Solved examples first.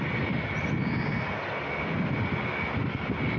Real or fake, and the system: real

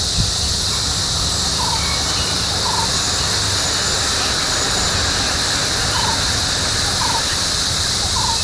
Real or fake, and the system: real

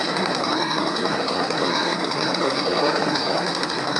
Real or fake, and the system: fake, codec, SNAC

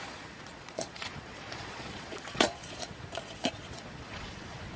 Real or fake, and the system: fake, vocoder, Vocos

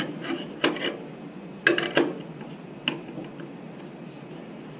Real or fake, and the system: real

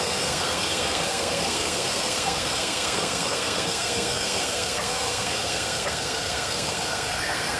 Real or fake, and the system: fake, codec, SNAC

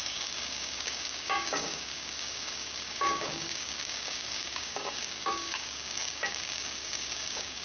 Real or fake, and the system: fake, codec, DAC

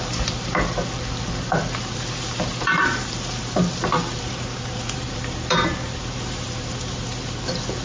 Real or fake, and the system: fake, vocoder, BigVGAN v2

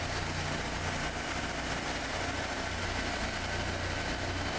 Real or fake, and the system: real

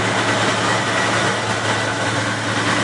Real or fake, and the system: real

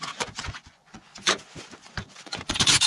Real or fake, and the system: fake, vocoder, Vocos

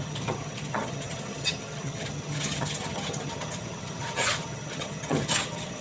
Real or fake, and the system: fake, vocoder, HiFi-GAN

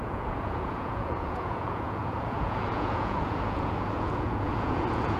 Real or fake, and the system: fake, vocoder, Vocos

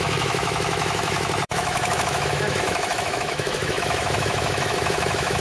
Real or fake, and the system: fake, autoencoder, DAC-VAE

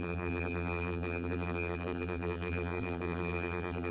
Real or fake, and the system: fake, vocoder, BigVGAN v2